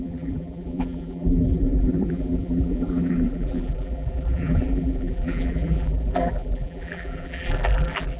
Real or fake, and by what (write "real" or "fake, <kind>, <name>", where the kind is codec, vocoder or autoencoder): fake, vocoder, BigVGAN v2